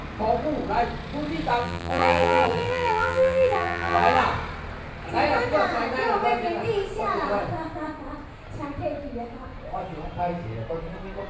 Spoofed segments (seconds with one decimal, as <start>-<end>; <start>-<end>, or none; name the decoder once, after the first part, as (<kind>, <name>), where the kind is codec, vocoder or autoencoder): 1.6-4.2 (vocoder, BigVGAN v2)